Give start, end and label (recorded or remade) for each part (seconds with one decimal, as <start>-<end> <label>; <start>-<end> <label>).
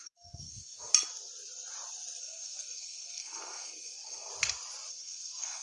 0.0-0.9 remade; 0.9-2.2 recorded; 2.2-4.3 remade; 4.3-4.9 recorded; 4.9-5.6 remade